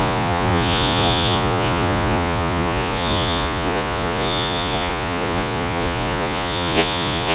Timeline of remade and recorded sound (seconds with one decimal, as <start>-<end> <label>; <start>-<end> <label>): 0.0-7.3 remade